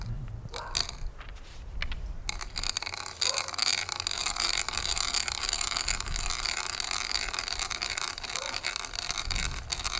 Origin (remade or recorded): recorded